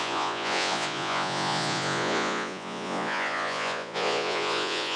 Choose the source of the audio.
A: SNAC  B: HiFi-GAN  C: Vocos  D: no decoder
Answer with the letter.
C